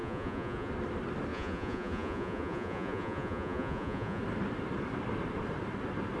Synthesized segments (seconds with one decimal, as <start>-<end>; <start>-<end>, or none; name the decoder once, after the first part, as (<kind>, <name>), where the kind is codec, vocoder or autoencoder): 0.0-0.7 (vocoder, Vocos); 1.3-4.2